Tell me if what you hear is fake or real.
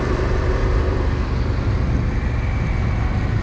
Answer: real